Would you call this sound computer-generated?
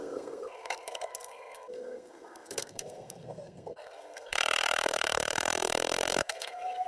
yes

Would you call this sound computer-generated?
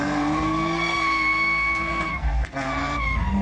yes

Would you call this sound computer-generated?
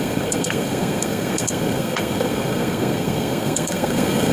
yes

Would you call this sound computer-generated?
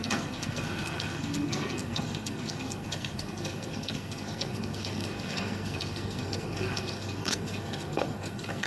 yes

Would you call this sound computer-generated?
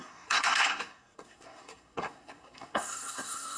yes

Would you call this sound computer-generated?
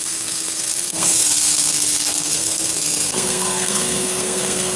yes